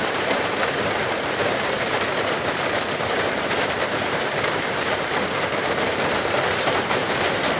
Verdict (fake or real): fake